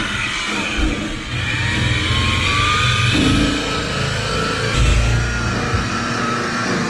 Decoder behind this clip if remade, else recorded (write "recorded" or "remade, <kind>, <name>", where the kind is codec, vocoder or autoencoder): recorded